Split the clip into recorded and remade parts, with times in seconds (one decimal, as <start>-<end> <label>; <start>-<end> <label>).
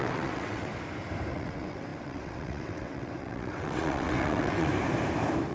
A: 0.0-0.7 remade; 0.7-1.3 recorded; 1.3-4.7 remade; 4.7-5.5 recorded